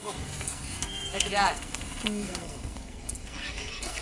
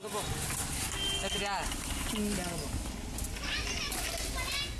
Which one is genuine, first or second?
second